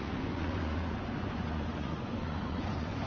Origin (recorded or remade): remade